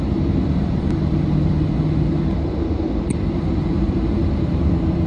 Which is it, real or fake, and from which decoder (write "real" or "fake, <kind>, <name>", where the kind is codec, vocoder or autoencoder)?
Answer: real